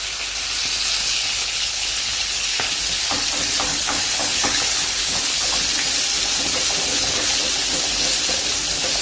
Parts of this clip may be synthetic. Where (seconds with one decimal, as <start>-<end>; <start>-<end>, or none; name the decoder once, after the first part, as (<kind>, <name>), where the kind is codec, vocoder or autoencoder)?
1.0-2.7 (codec, HILCodec); 3.7-5.6; 6.9-7.4